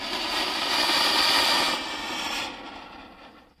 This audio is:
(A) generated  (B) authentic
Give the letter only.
B